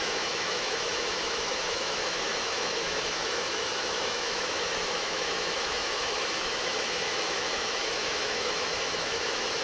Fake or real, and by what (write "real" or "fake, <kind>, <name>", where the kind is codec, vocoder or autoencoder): fake, autoencoder, DAC-VAE